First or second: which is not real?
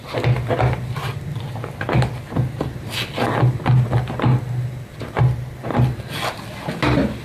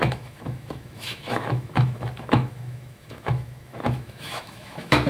second